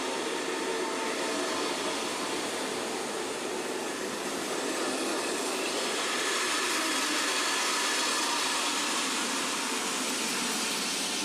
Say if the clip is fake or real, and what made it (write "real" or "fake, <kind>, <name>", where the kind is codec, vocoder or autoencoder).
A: real